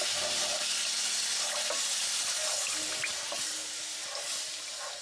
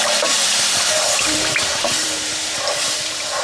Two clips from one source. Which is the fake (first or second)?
second